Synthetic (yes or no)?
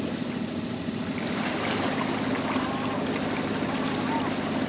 no